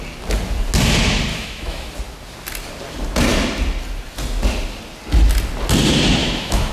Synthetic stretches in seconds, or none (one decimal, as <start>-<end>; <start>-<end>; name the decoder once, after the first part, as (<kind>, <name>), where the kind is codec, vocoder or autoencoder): 1.3-1.9 (autoencoder, DAC-VAE); 6.2-6.7